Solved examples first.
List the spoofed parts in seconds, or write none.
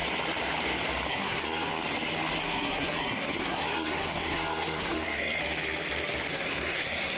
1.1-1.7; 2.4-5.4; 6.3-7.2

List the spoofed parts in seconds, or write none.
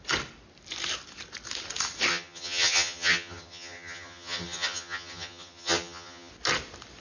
2.1-6.3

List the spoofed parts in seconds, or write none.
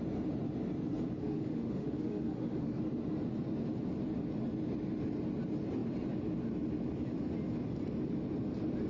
1.2-2.8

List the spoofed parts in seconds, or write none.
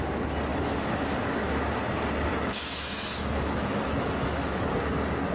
0.5-1.1; 2.3-4.7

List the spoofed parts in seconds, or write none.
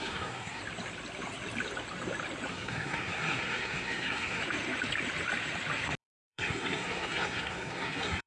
0.0-0.6; 2.5-4.4; 6.0-8.3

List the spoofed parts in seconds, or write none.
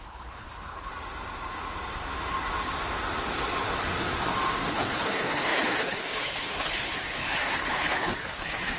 0.0-0.9; 4.7-8.8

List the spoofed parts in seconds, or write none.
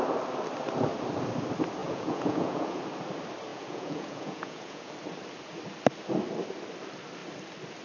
1.8-2.8; 3.5-4.9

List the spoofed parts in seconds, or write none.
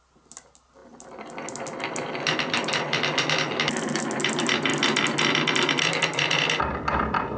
none